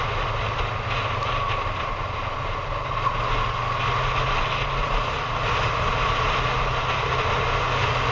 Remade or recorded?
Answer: recorded